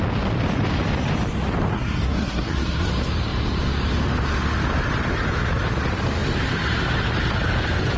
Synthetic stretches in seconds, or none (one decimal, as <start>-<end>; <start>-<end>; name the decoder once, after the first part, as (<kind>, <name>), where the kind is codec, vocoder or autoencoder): 1.7-2.9 (codec, SNAC)